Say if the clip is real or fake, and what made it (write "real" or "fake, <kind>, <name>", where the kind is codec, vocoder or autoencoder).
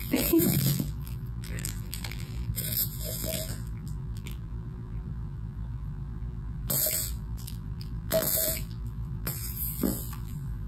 fake, vocoder, BigVGAN v2